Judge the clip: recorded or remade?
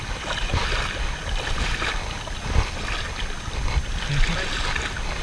recorded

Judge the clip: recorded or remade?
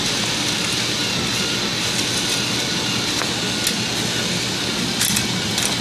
recorded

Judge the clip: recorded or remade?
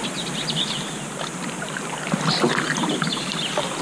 recorded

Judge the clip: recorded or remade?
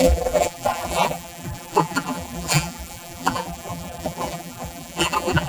remade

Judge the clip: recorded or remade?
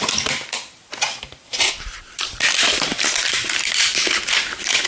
remade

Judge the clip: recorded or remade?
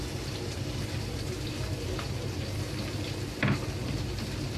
recorded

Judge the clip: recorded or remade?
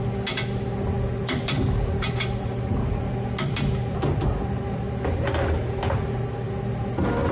recorded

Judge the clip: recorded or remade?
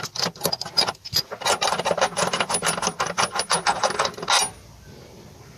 recorded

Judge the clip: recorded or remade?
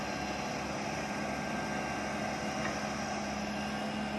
recorded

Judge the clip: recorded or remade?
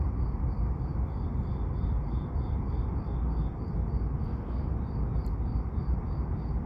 recorded